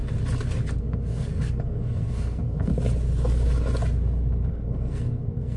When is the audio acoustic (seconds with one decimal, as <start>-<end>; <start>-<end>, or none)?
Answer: 0.0-0.8; 2.7-4.5

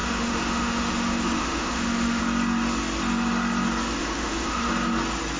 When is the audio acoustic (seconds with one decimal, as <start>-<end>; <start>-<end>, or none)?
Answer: 2.2-4.0; 4.7-5.4

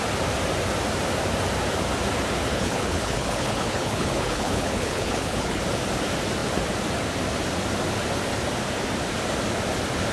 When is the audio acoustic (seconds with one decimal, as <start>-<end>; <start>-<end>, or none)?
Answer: 0.0-2.5; 5.6-10.1

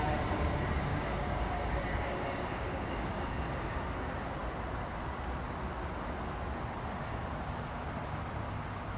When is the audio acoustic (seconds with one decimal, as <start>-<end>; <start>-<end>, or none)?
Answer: 0.0-0.9; 3.8-9.0

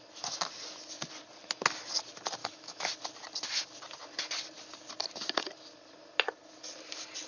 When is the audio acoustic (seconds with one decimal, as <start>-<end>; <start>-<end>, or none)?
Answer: 0.0-2.4; 2.9-7.3

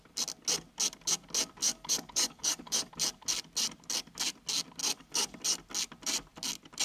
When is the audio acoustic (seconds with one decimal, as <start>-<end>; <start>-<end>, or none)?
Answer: 0.0-1.6; 2.9-4.8; 5.4-6.8